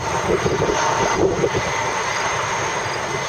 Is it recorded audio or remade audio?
recorded